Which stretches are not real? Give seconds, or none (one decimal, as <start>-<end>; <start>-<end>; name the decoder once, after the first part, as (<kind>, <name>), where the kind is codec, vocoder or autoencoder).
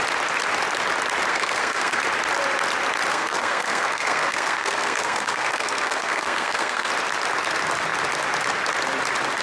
1.3-2.0 (codec, SNAC); 3.1-6.9